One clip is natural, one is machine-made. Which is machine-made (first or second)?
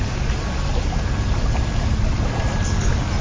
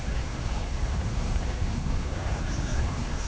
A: second